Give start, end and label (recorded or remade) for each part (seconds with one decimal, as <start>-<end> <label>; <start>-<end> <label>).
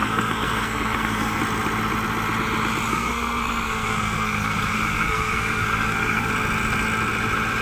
0.0-1.4 remade; 1.4-2.9 recorded; 2.9-6.3 remade; 6.3-7.6 recorded